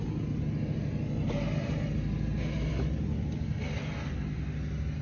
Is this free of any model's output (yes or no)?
yes